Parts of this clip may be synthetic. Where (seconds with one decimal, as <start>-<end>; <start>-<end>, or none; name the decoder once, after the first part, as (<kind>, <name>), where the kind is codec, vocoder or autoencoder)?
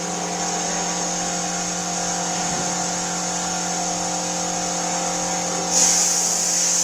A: none